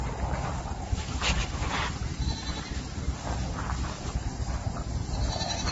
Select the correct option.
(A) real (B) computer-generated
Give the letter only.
A